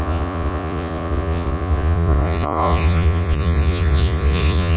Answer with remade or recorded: remade